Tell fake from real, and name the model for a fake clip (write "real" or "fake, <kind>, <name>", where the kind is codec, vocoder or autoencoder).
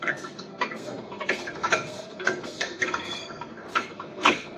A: fake, codec, SNAC